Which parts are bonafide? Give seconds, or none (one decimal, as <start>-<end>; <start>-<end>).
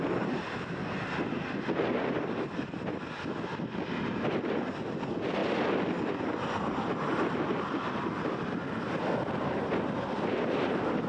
0.0-11.1